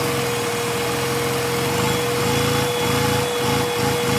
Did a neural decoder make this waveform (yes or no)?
no